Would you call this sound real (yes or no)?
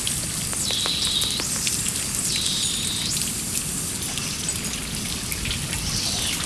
yes